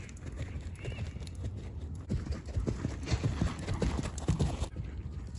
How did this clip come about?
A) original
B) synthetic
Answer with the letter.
B